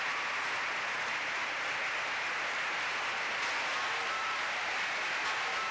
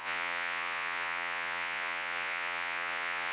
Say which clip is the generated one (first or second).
second